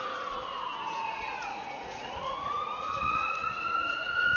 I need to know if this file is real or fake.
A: fake